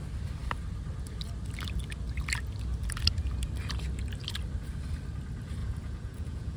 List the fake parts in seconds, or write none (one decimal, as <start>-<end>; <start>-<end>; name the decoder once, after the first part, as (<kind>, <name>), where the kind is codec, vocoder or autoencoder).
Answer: 5.6-6.6 (vocoder, Vocos)